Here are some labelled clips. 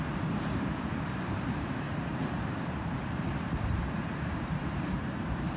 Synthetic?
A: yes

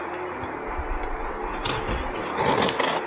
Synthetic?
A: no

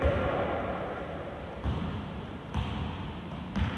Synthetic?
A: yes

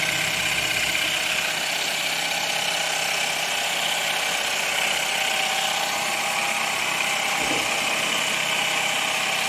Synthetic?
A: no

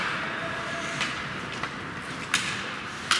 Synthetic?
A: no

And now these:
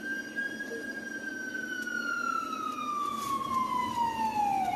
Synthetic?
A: no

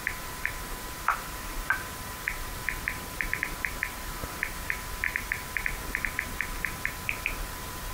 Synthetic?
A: yes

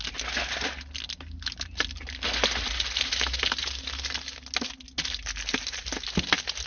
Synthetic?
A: no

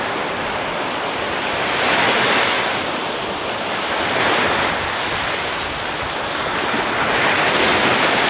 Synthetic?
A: no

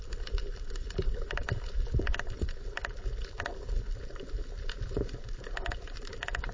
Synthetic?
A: yes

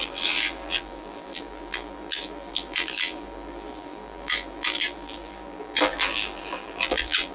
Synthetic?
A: yes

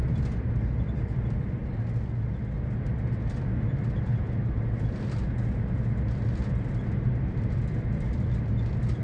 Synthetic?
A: no